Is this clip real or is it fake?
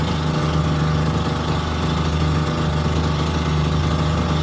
real